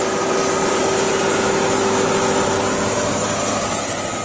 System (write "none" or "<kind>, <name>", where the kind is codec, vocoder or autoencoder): none